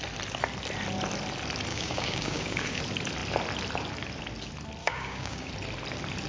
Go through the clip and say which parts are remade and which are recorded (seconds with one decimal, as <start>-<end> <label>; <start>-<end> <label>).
0.0-1.7 recorded; 1.7-2.8 remade; 2.8-4.8 recorded; 4.8-5.5 remade; 5.5-6.3 recorded